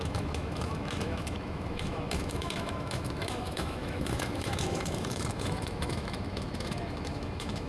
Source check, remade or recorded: remade